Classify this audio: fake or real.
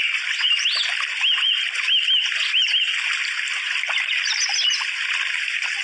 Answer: real